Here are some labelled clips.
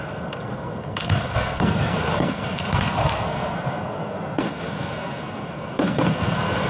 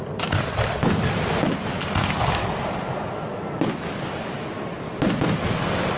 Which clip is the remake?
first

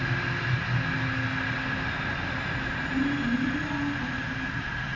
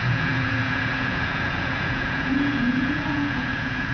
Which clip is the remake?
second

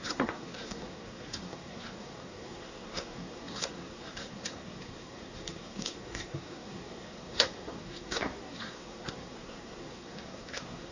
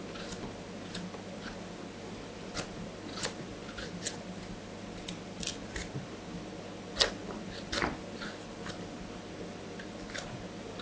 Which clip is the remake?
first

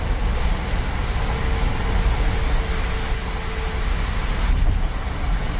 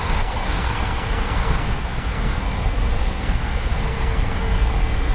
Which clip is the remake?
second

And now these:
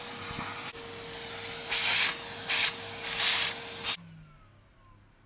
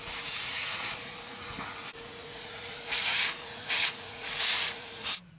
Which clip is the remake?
second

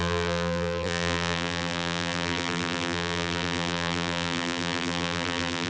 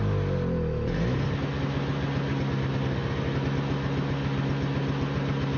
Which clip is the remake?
first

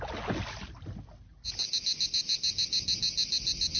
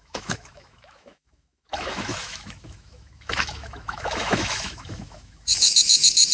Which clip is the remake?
second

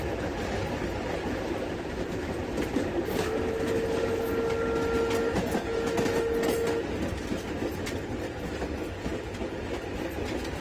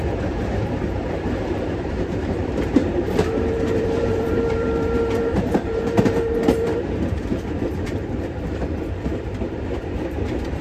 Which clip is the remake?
second